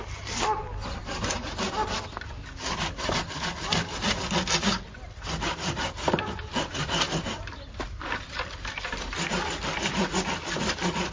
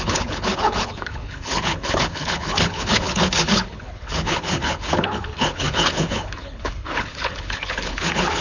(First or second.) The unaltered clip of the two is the first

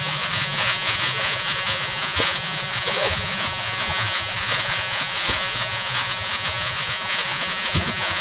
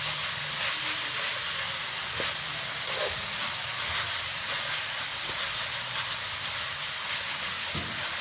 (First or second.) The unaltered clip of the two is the second